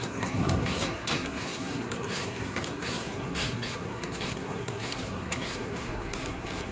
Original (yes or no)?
no